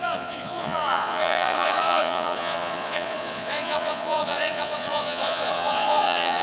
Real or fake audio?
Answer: fake